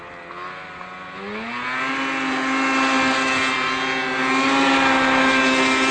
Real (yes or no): yes